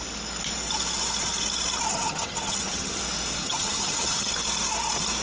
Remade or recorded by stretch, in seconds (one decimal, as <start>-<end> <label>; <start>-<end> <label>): 0.0-1.9 recorded; 1.9-3.0 remade; 3.0-3.4 recorded; 3.4-4.3 remade; 4.3-5.2 recorded